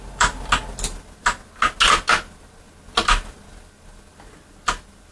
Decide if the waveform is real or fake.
real